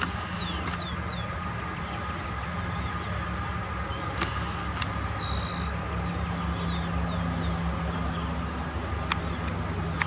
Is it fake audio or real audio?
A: real